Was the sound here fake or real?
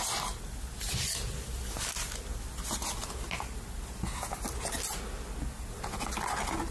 real